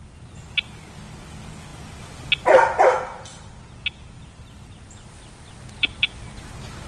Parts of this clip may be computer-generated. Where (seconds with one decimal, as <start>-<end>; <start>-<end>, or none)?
none